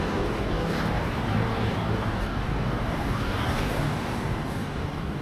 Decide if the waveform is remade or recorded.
remade